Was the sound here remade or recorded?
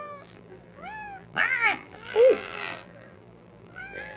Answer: remade